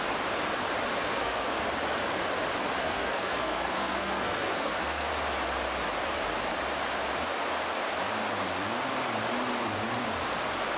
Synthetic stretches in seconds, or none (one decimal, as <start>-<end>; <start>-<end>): 0.9-1.6; 2.8-5.1